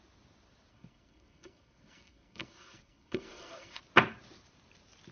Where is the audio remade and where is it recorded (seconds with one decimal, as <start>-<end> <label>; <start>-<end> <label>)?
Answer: 0.0-0.7 recorded; 0.7-3.8 remade; 3.8-5.1 recorded